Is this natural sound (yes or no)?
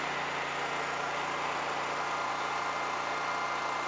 yes